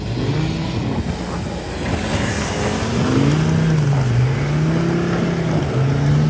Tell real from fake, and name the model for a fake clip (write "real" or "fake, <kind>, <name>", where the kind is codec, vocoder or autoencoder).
real